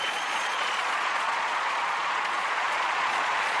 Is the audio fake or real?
fake